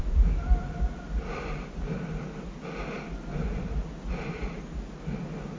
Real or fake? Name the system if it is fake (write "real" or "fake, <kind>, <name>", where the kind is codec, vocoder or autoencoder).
real